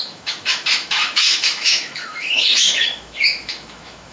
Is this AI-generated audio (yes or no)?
yes